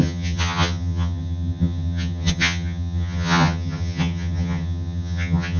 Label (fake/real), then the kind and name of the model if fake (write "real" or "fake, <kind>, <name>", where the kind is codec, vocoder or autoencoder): fake, vocoder, HiFi-GAN